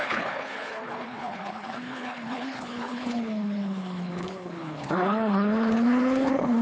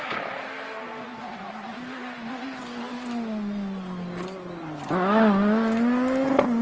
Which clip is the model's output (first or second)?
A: first